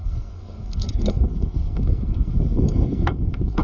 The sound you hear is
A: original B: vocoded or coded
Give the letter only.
B